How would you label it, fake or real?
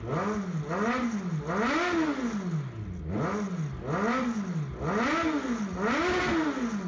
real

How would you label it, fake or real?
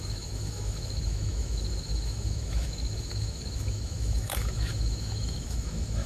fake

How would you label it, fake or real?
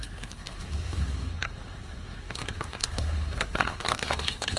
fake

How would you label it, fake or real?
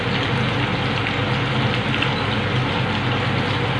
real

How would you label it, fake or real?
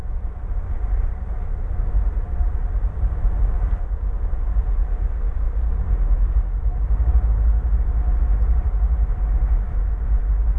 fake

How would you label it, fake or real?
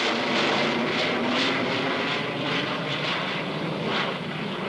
real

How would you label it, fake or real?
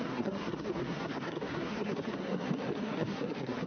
fake